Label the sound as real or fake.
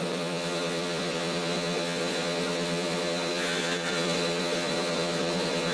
fake